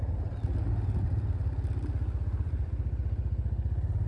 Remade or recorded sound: recorded